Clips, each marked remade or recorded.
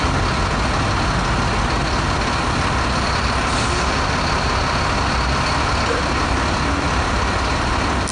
recorded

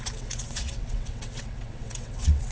remade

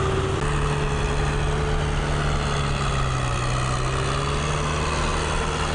recorded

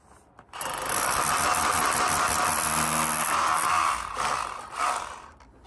recorded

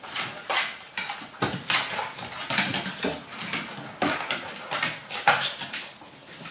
recorded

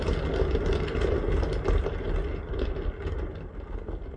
recorded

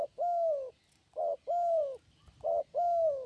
recorded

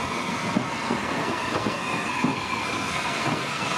remade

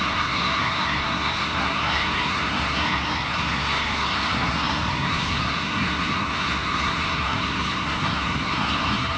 remade